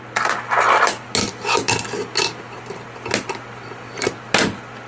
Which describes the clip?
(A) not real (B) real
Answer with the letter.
B